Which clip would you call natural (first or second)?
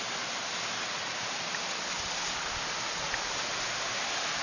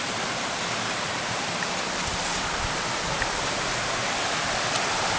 first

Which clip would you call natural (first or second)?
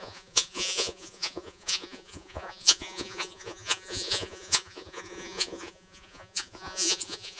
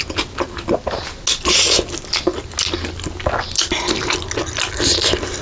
second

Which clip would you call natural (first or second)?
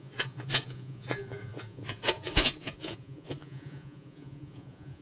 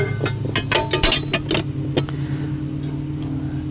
second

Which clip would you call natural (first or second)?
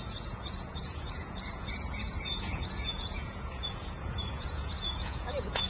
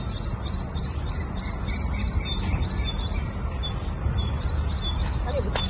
second